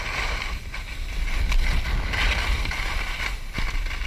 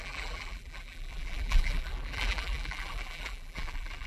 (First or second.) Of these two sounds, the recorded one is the first